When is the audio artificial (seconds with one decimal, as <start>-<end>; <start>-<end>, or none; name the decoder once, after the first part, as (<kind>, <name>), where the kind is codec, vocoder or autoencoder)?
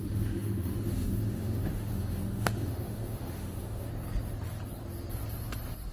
0.0-3.9 (autoencoder, DAC-VAE)